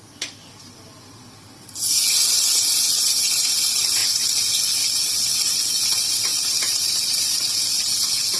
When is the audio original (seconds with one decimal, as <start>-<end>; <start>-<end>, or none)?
0.0-6.3; 6.9-8.4

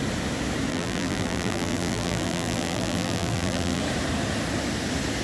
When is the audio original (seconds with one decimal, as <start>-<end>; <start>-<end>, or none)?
0.0-0.7; 3.8-5.2